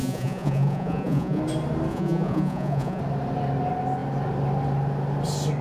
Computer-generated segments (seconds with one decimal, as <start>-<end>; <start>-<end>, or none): 0.0-1.4; 1.9-3.0